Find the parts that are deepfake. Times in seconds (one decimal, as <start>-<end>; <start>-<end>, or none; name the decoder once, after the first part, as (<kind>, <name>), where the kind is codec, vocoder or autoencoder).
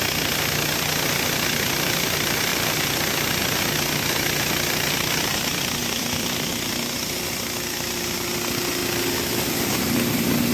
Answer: 2.5-3.4 (vocoder, BigVGAN v2); 5.8-6.5